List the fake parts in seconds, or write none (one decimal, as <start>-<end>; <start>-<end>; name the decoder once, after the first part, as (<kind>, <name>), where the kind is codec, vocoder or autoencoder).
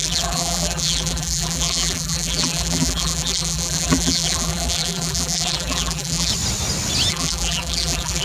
0.0-6.3 (vocoder, BigVGAN v2); 7.1-8.2